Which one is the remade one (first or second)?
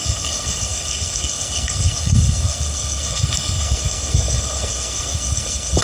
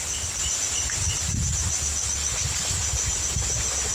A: first